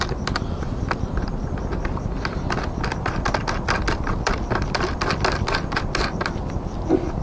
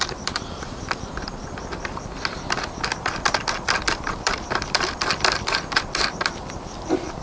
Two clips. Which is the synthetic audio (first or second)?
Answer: second